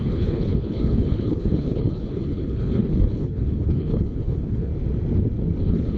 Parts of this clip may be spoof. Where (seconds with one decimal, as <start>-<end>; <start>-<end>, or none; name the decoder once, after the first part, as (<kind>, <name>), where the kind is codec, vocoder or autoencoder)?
0.0-4.7 (codec, HILCodec); 5.6-6.0